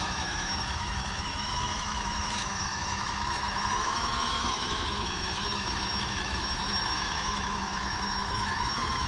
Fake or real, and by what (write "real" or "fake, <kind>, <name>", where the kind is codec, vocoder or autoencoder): fake, autoencoder, DAC-VAE